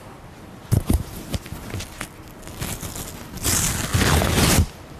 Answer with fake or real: real